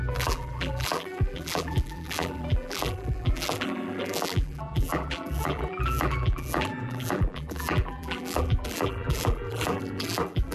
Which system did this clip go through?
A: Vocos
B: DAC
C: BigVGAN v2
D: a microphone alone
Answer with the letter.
C